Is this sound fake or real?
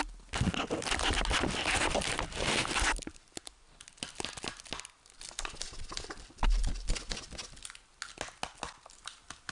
real